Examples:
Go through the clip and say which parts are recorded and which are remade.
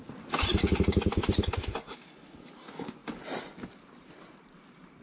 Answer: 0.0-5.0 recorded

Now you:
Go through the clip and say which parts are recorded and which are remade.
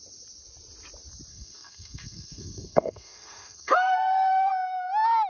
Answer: 0.0-1.3 recorded; 1.3-4.5 remade; 4.5-5.3 recorded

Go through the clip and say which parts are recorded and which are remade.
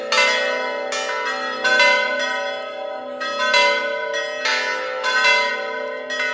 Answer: 0.0-6.3 recorded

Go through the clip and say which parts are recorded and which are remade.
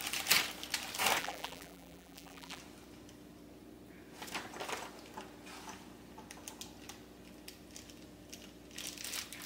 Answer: 0.0-1.2 recorded; 1.2-2.6 remade; 2.6-9.5 recorded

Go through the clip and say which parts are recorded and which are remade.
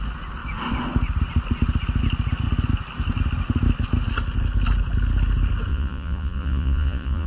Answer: 0.0-5.7 recorded; 5.7-7.3 remade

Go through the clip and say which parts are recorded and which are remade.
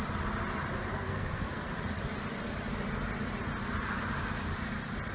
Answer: 0.0-0.9 recorded; 0.9-1.7 remade; 1.7-5.1 recorded